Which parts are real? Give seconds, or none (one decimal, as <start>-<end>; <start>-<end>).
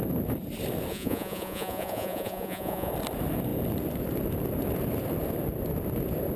0.0-0.9; 2.9-6.4